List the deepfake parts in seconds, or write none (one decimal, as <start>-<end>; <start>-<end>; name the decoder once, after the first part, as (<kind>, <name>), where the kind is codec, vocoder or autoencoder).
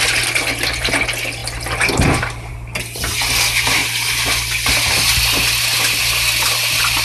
1.4-2.5 (vocoder, BigVGAN v2)